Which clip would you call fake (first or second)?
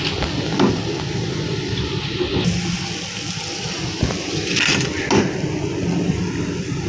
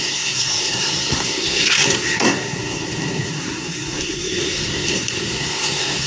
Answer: second